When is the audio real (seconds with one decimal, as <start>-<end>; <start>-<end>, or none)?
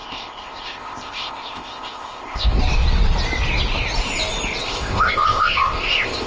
2.6-4.6